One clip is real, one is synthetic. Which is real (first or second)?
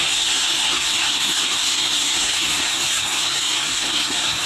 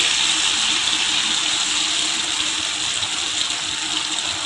second